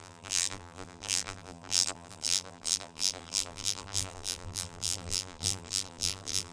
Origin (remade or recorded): remade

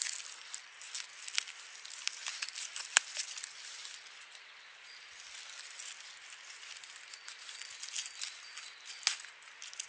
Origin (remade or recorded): recorded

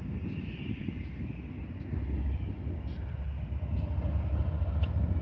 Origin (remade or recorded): recorded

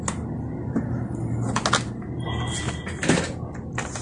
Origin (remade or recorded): recorded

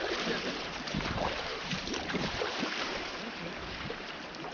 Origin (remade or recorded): remade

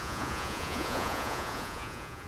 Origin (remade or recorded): remade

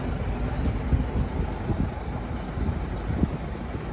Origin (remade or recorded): recorded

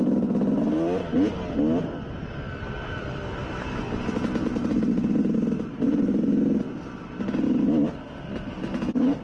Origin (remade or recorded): recorded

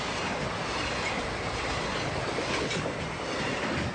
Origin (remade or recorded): recorded